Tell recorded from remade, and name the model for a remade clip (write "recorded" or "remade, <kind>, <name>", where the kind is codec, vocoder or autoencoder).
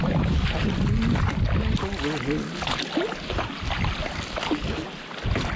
recorded